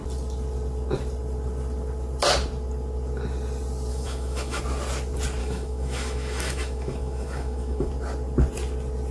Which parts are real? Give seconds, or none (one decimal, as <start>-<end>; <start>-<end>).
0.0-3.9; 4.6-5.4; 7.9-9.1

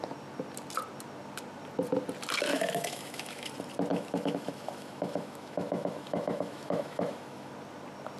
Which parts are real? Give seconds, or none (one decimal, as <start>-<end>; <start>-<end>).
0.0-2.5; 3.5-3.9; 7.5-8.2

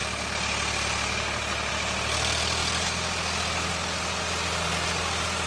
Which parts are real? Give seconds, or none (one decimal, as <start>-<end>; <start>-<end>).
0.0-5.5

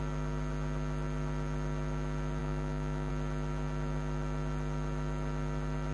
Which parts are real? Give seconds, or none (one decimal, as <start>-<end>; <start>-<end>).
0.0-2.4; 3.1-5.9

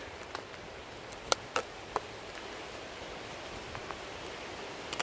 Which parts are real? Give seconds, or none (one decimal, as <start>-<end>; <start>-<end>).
0.0-5.0

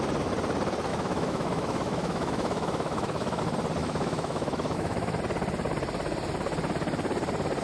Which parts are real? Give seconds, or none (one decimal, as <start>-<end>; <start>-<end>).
0.0-0.9; 3.4-3.8; 5.2-7.6